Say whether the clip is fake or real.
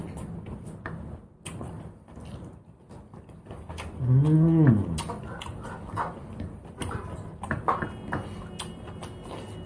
real